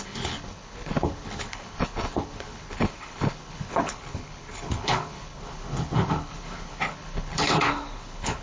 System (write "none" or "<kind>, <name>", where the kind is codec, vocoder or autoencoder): codec, HILCodec